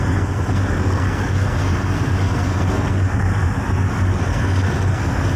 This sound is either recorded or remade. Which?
remade